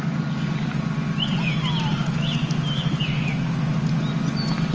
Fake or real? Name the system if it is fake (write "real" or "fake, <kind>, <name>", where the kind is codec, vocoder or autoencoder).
real